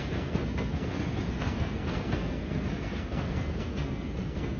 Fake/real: fake